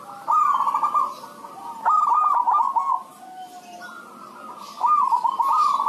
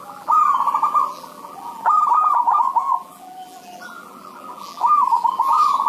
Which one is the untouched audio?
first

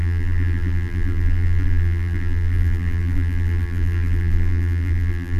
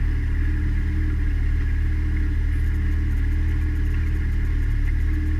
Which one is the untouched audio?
second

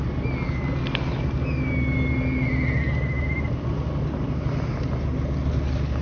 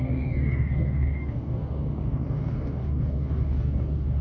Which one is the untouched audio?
first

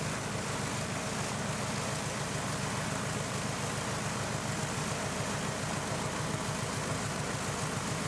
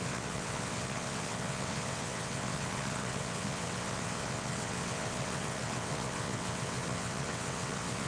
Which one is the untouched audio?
first